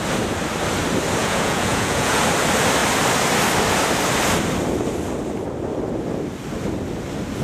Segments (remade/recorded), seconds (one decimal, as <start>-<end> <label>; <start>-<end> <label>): 0.0-1.2 recorded; 1.2-2.2 remade; 2.2-7.4 recorded

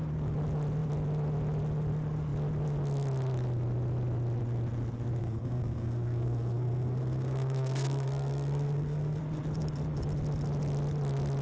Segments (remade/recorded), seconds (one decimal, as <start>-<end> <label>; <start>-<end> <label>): 0.0-5.2 recorded; 5.2-9.2 remade; 9.2-11.4 recorded

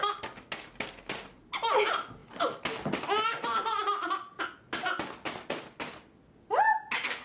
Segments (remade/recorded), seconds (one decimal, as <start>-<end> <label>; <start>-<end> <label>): 0.0-7.2 recorded

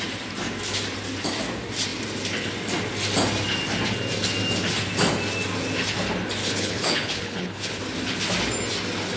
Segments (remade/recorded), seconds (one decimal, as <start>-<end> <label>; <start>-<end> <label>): 0.0-6.4 recorded; 6.4-7.8 remade; 7.8-9.2 recorded

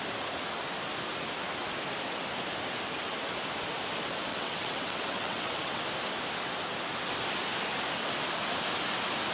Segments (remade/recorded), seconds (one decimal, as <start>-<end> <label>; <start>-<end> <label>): 0.0-4.3 recorded; 4.3-5.8 remade; 5.8-9.3 recorded